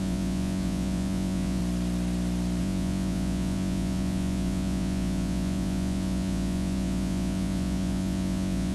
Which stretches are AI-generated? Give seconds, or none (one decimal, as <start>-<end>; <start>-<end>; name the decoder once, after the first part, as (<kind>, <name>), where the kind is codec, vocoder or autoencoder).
0.0-1.6 (vocoder, Vocos); 2.6-8.7